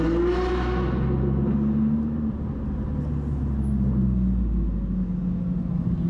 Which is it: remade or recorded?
recorded